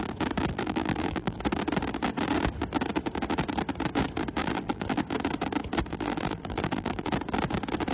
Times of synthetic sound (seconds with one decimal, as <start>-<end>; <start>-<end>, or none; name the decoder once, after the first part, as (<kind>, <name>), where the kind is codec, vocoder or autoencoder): 0.5-1.4 (vocoder, BigVGAN v2); 4.4-5.0; 5.9-7.1